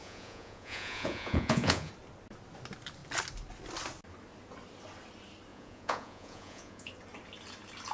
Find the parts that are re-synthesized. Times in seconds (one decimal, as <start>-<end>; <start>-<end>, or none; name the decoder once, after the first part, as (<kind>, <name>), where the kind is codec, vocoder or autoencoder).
0.0-1.9 (vocoder, Vocos); 5.5-6.9